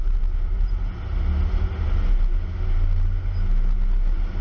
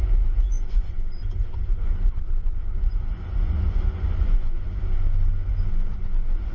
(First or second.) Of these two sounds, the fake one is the second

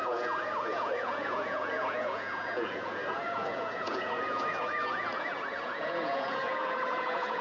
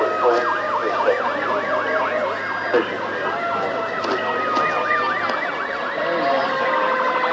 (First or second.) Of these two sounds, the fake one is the first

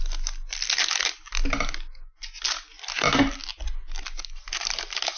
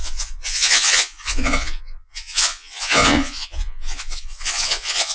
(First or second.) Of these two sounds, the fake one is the second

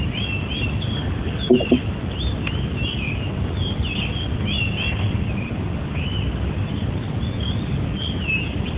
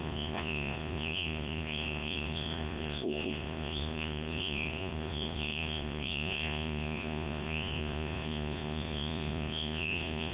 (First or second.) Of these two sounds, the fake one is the second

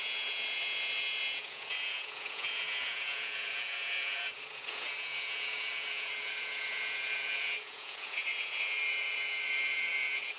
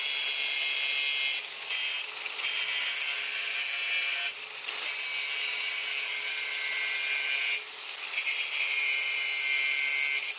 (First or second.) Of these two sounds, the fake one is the first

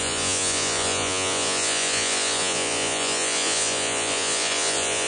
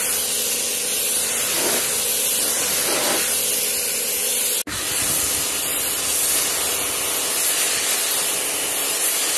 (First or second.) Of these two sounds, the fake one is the first